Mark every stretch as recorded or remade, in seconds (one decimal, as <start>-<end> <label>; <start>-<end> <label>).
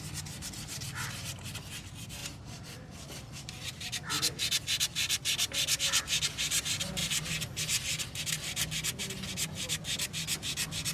0.0-10.9 recorded